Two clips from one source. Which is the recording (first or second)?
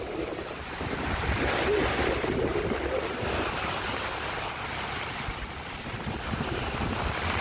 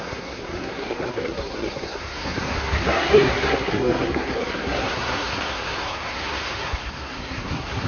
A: first